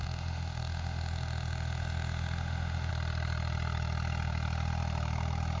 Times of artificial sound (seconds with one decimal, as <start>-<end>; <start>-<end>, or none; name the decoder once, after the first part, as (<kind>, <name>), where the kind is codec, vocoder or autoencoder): 0.0-2.9 (autoencoder, DAC-VAE)